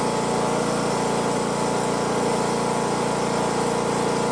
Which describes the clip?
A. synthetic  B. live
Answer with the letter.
B